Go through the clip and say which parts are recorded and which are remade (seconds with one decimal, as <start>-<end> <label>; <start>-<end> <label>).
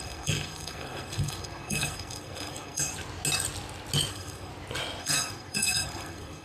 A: 0.0-2.9 remade; 2.9-4.1 recorded; 4.1-4.5 remade; 4.5-5.0 recorded; 5.0-6.4 remade